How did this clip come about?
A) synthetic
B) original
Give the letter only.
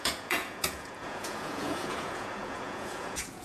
A